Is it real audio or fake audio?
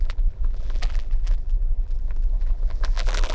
fake